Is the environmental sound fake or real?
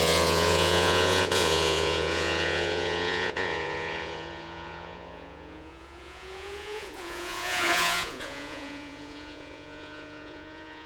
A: fake